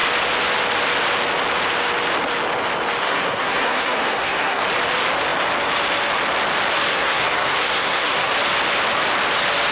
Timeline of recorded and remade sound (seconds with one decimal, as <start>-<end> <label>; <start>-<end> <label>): 0.0-3.0 recorded; 3.0-4.6 remade; 4.6-6.9 recorded; 6.9-8.3 remade; 8.3-9.7 recorded